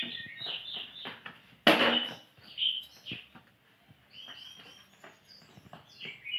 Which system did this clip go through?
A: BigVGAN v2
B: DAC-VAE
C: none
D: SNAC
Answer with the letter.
C